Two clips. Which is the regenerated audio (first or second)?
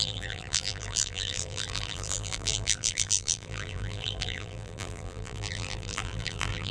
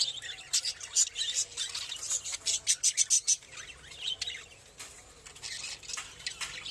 first